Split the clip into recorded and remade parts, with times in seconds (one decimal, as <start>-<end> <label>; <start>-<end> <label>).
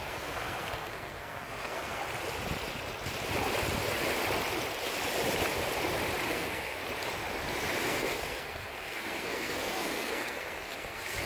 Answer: 0.0-2.0 remade; 2.0-6.3 recorded; 6.3-6.8 remade; 6.8-7.8 recorded; 7.8-11.3 remade